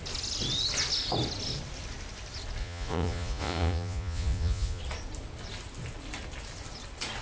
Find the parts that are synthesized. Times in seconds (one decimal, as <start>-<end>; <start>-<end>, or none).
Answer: 2.6-4.8